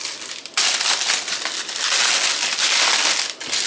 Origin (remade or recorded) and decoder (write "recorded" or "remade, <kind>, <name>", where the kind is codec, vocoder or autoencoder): recorded